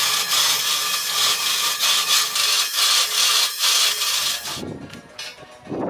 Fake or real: real